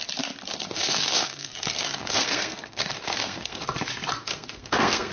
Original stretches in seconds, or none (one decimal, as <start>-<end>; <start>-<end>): 0.0-0.5; 3.6-4.2